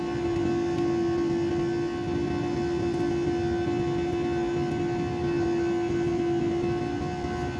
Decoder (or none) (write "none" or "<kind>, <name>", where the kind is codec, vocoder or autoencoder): none